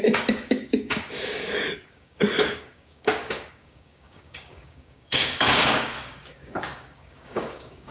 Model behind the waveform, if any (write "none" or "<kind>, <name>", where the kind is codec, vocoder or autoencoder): codec, DAC